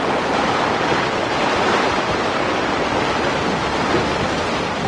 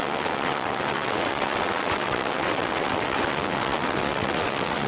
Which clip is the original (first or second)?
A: first